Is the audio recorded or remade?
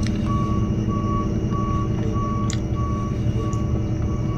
recorded